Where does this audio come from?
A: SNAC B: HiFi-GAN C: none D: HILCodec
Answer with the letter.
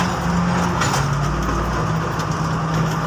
C